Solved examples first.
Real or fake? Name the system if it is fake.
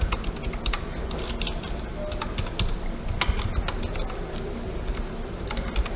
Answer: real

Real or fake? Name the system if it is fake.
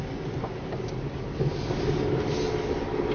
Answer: real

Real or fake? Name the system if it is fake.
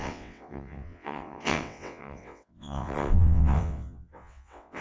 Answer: fake, vocoder, WaveNeXt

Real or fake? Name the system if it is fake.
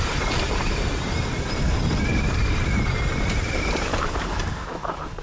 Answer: fake, vocoder, BigVGAN v2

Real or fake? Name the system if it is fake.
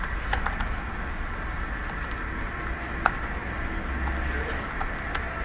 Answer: real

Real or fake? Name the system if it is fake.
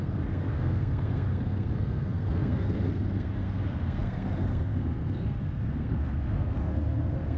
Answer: fake, codec, SNAC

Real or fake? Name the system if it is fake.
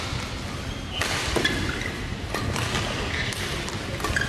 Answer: real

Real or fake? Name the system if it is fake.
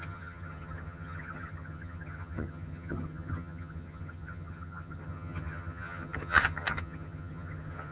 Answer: fake, vocoder, HiFi-GAN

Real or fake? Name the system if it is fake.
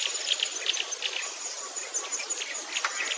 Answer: real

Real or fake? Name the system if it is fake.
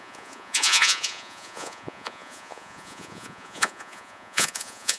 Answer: fake, vocoder, Vocos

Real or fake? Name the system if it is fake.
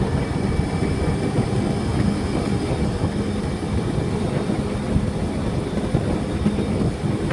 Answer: real